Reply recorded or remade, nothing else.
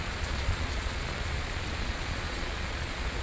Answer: remade